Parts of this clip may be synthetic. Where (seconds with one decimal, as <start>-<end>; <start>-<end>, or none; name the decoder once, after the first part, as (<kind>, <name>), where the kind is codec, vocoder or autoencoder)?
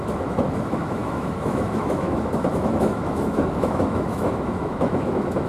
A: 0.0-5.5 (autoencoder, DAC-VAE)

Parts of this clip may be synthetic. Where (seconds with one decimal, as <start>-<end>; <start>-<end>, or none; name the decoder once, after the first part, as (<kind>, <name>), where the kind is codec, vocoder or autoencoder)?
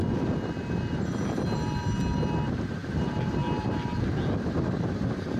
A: none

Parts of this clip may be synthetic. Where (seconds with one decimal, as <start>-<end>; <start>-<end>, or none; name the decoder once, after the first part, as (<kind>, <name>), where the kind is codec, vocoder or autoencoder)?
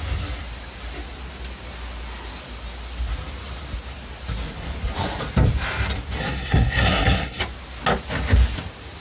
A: 6.2-7.4 (codec, SNAC)